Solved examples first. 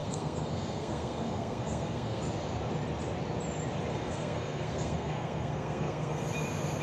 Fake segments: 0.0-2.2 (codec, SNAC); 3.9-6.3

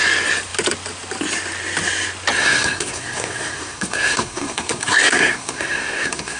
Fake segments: 2.4-6.4 (codec, SNAC)

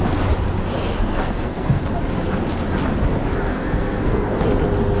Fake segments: 1.1-1.8 (codec, SNAC); 3.5-4.4

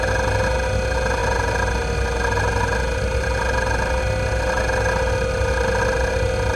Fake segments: none

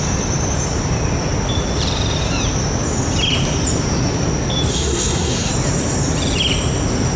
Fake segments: 4.7-5.5 (codec, SNAC)